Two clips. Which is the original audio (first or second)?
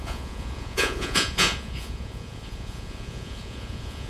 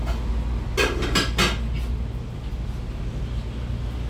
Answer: second